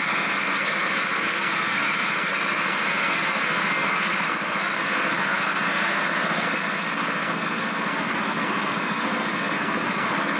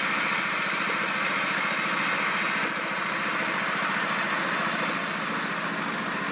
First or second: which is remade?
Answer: first